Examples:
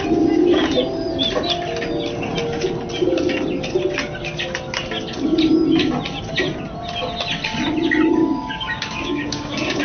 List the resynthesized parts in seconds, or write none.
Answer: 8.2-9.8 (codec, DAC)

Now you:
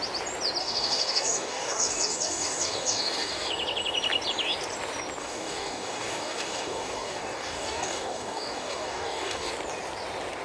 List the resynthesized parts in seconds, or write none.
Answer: 0.6-3.5 (codec, DAC); 5.2-9.5

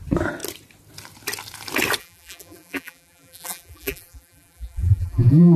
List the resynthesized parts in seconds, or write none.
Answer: 2.0-5.6 (vocoder, BigVGAN v2)

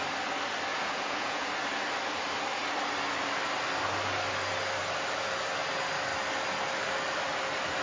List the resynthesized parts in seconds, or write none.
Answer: 0.7-1.5 (vocoder, Vocos)